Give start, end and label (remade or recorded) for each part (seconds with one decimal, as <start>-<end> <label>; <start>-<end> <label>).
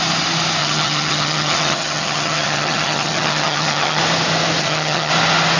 0.0-0.6 recorded; 0.6-4.0 remade; 4.0-4.6 recorded; 4.6-5.1 remade; 5.1-5.6 recorded